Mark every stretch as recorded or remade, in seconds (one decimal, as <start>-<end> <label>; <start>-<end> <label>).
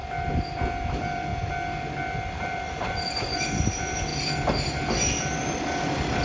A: 0.0-0.9 recorded; 0.9-1.3 remade; 1.3-2.3 recorded; 2.3-4.1 remade; 4.1-6.2 recorded